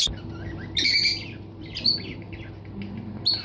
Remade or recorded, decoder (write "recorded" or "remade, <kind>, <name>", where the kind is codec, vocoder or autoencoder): recorded